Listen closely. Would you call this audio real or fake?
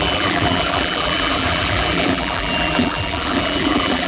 fake